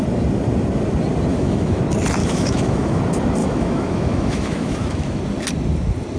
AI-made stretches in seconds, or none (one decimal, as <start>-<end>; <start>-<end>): 1.3-1.8; 2.2-3.0; 3.4-5.2